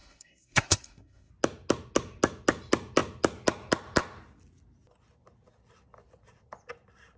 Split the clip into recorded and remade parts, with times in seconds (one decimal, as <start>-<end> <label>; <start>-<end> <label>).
0.0-1.3 remade; 1.3-7.2 recorded

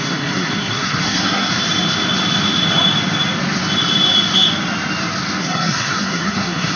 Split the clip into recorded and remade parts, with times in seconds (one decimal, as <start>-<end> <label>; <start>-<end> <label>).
0.0-1.5 remade; 1.5-5.4 recorded; 5.4-6.8 remade